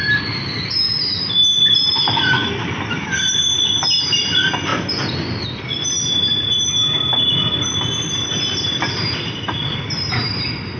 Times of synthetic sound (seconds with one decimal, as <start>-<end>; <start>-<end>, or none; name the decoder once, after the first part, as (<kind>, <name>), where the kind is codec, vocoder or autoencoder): none